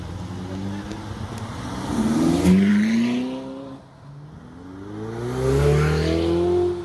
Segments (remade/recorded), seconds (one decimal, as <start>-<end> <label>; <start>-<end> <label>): 0.0-6.8 recorded